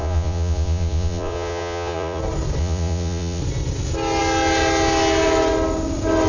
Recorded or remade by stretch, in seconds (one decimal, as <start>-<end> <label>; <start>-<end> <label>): 0.0-2.2 remade; 2.2-2.6 recorded; 2.6-3.4 remade; 3.4-6.3 recorded